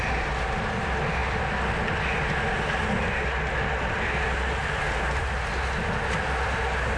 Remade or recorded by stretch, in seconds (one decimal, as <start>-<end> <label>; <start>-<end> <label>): 0.0-7.0 recorded